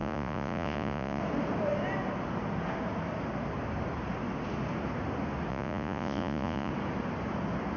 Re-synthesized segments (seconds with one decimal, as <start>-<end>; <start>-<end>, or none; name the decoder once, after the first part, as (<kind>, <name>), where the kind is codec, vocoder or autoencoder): 0.0-1.2 (vocoder, Vocos); 5.5-6.7

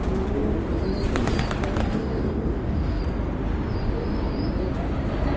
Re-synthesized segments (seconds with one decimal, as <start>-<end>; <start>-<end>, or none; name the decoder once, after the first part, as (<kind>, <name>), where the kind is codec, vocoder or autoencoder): 1.8-3.0 (codec, DAC)

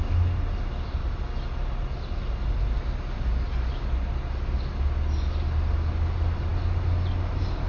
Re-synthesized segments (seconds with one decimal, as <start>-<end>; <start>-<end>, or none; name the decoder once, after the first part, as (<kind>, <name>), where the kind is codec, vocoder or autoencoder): none

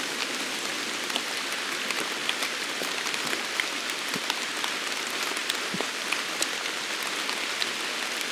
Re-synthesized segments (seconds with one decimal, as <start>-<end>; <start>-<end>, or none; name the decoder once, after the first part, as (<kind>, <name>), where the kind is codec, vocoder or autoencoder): 0.7-1.4 (vocoder, BigVGAN v2); 5.4-7.1

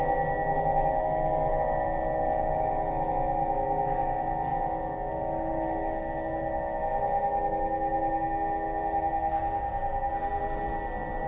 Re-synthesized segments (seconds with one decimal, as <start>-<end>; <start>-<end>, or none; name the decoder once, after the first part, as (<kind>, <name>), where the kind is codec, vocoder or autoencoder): 4.5-5.1 (autoencoder, DAC-VAE)

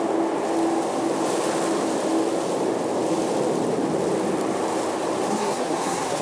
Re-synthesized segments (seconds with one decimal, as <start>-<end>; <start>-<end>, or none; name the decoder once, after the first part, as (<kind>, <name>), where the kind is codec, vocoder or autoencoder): 5.3-6.2 (codec, SNAC)